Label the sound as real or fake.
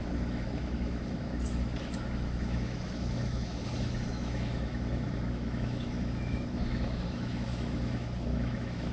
fake